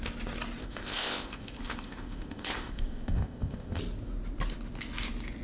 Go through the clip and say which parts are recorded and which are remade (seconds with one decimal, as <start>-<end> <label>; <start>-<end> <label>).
0.0-0.6 recorded; 0.6-3.8 remade; 3.8-5.4 recorded